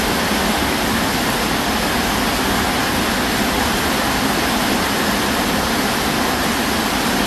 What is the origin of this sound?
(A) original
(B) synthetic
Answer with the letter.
A